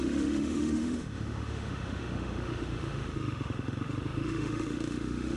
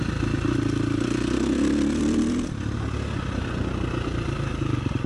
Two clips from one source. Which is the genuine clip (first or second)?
second